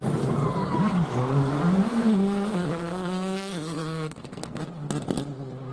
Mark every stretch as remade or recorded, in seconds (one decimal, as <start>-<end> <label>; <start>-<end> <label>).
0.0-1.9 recorded; 1.9-4.6 remade; 4.6-5.7 recorded